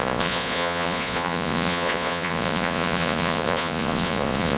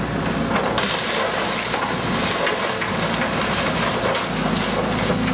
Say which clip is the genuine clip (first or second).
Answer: second